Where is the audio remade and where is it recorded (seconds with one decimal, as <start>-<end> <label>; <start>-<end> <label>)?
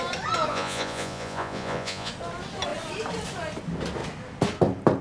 0.0-0.5 recorded; 0.5-2.1 remade; 2.1-5.0 recorded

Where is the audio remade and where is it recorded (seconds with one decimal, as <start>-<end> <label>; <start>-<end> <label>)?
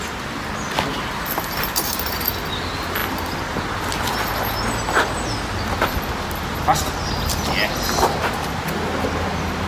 0.0-0.9 recorded; 0.9-2.3 remade; 2.3-9.7 recorded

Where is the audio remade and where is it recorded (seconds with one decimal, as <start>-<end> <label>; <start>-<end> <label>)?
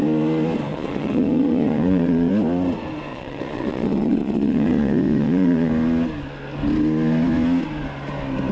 0.0-0.7 recorded; 0.7-2.3 remade; 2.3-3.1 recorded; 3.1-5.7 remade; 5.7-8.5 recorded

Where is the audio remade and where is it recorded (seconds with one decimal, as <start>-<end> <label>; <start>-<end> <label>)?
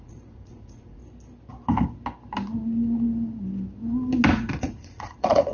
0.0-1.0 remade; 1.0-4.3 recorded; 4.3-5.5 remade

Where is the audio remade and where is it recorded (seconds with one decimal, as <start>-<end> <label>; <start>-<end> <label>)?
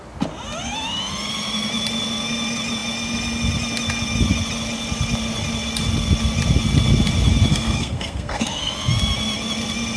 0.0-7.5 recorded; 7.5-8.7 remade; 8.7-10.0 recorded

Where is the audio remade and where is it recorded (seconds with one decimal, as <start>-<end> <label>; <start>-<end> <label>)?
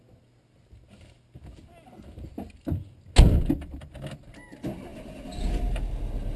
0.0-6.4 recorded